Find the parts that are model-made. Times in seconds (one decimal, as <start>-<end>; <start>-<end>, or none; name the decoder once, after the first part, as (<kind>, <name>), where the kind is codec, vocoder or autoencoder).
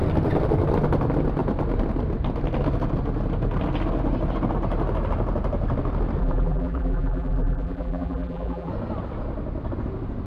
6.2-8.7 (vocoder, BigVGAN v2)